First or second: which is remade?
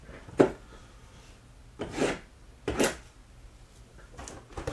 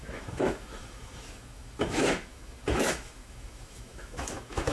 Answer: second